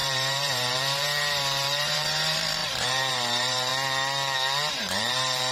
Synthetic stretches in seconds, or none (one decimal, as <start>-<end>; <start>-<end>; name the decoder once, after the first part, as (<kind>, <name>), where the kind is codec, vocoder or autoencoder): 0.0-3.7 (vocoder, BigVGAN v2); 4.8-5.5